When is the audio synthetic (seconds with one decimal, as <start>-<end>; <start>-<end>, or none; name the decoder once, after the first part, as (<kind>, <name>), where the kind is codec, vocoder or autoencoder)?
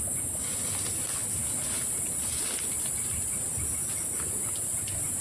none